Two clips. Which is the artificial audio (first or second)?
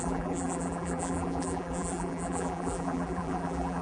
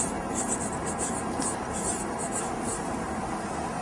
first